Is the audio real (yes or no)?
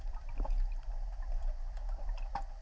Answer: yes